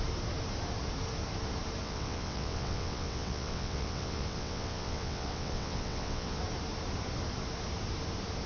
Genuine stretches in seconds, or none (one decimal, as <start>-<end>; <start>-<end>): 0.0-1.8; 6.4-8.5